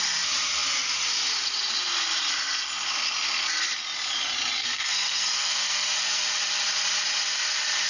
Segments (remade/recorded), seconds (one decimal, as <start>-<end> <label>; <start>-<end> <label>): 0.0-4.6 recorded; 4.6-6.2 remade; 6.2-7.9 recorded